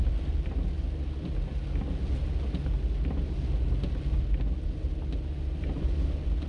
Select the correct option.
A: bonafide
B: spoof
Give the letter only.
A